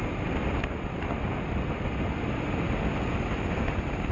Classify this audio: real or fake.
real